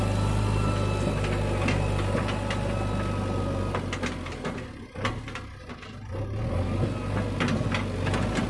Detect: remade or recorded recorded